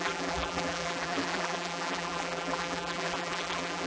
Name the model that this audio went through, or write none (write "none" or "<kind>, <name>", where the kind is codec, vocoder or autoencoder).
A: vocoder, BigVGAN v2